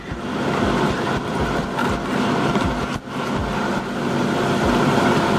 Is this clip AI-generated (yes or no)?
no